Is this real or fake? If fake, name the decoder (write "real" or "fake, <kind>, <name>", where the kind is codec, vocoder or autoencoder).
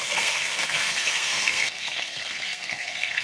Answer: fake, codec, SNAC